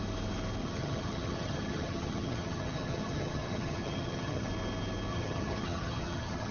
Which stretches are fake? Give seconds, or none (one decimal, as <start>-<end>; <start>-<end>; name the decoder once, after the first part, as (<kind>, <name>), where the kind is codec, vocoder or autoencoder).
0.6-4.5 (vocoder, HiFi-GAN); 5.1-6.5